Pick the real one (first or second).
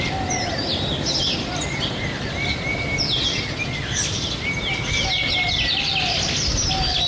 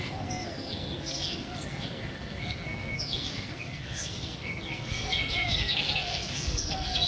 first